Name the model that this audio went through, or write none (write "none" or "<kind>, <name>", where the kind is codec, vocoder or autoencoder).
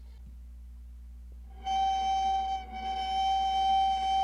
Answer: none